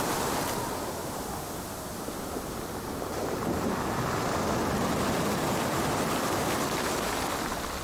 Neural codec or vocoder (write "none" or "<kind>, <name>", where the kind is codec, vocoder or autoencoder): none